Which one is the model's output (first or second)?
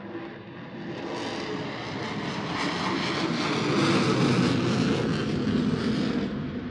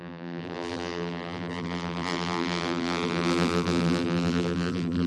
second